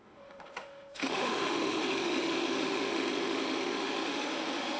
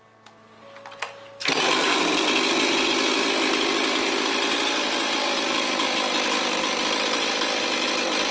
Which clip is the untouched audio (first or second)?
second